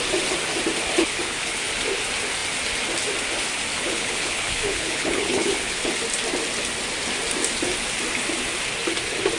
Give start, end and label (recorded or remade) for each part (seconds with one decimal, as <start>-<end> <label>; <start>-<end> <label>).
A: 0.0-1.0 recorded; 1.0-1.7 remade; 1.7-3.7 recorded; 3.7-5.9 remade; 5.9-9.4 recorded